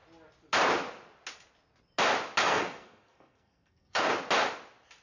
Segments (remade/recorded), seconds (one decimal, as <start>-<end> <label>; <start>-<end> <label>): 0.0-2.4 recorded; 2.4-4.1 remade; 4.1-5.0 recorded